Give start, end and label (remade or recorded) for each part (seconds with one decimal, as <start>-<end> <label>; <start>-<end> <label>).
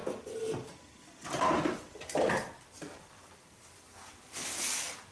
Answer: 0.0-5.1 recorded